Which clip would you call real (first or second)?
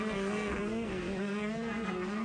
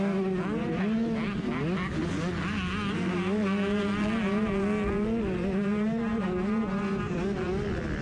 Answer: second